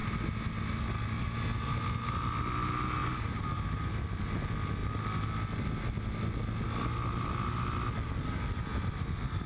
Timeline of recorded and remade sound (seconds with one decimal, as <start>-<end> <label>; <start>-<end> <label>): 0.0-3.0 recorded; 3.0-4.0 remade; 4.0-8.7 recorded; 8.7-9.5 remade